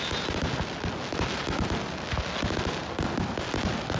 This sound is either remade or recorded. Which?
recorded